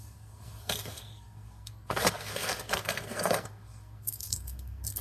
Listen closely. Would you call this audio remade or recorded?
remade